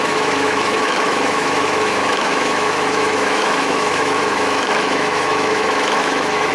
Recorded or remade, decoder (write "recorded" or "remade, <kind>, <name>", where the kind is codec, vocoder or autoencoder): remade, autoencoder, DAC-VAE